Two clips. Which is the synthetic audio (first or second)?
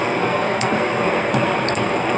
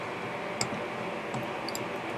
first